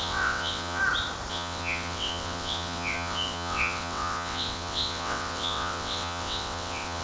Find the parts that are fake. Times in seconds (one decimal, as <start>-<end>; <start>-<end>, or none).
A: 0.0-0.8; 1.3-7.0